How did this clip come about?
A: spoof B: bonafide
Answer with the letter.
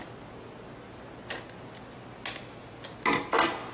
B